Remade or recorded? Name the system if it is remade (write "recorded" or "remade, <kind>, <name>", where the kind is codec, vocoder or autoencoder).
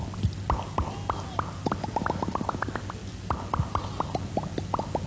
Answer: recorded